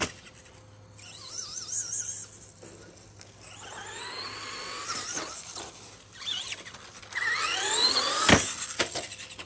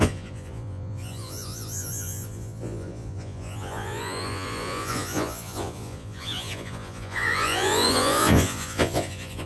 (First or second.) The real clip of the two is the first